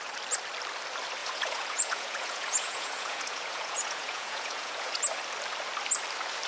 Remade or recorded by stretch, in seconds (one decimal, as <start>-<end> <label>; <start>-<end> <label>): 0.0-1.2 recorded; 1.2-5.0 remade; 5.0-6.5 recorded